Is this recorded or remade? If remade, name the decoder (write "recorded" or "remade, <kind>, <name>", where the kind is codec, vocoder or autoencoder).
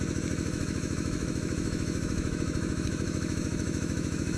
remade, autoencoder, DAC-VAE